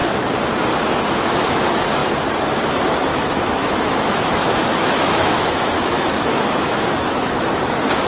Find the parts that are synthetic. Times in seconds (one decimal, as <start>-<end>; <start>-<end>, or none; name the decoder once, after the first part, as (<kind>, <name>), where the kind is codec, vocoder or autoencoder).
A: 3.1-7.4 (autoencoder, DAC-VAE)

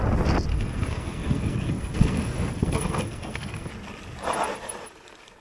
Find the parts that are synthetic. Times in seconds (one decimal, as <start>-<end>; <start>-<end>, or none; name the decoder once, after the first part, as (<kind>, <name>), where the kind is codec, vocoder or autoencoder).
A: 0.5-3.7 (codec, SNAC)

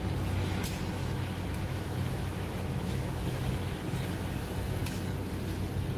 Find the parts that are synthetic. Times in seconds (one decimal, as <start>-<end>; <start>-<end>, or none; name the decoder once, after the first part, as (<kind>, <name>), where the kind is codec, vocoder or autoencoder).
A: 1.0-3.8 (autoencoder, DAC-VAE)

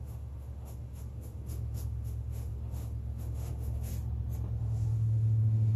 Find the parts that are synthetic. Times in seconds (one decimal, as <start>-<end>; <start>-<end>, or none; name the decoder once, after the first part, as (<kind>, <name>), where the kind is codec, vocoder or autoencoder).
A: 0.0-3.9 (autoencoder, DAC-VAE); 4.6-5.8